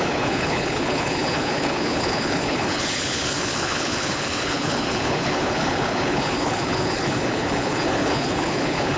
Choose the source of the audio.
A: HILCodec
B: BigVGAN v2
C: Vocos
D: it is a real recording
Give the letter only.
A